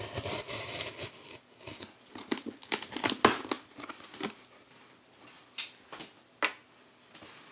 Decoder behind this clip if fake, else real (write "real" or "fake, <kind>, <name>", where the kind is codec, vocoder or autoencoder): real